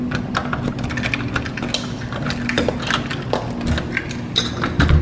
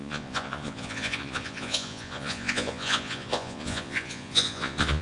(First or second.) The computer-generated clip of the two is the second